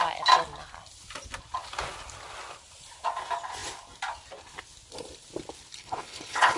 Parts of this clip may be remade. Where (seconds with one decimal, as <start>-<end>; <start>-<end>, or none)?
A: 5.8-6.6